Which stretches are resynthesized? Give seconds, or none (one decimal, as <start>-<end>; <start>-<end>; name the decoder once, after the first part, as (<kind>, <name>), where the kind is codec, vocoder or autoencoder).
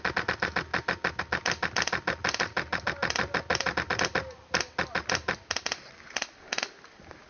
none